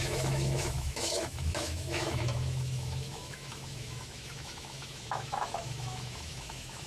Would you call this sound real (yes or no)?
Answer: no